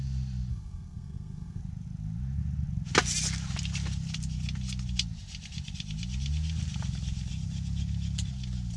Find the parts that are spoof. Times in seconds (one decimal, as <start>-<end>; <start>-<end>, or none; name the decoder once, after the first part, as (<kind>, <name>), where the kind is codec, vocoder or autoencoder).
0.5-1.6 (codec, SNAC)